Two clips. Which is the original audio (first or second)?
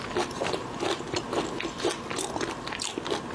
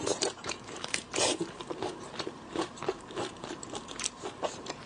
first